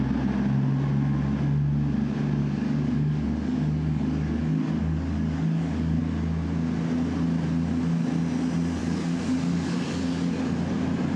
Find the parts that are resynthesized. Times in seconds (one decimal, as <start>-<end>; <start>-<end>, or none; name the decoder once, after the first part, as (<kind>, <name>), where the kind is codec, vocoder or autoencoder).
2.4-6.0 (codec, DAC); 8.8-9.8